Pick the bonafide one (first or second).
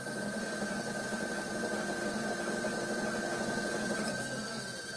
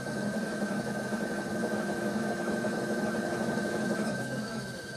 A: first